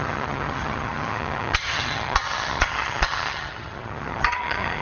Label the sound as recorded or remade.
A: remade